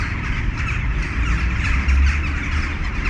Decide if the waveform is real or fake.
real